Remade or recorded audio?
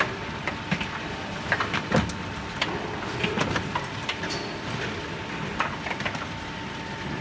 recorded